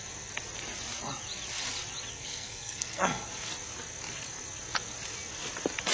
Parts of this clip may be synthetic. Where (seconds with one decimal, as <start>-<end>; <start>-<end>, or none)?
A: 2.1-3.3

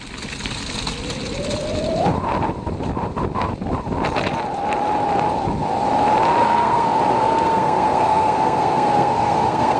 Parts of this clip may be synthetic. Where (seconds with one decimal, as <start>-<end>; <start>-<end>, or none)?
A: 6.4-9.8